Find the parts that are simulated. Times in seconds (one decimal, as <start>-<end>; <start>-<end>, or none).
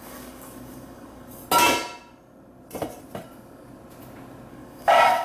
0.0-1.4; 4.5-5.2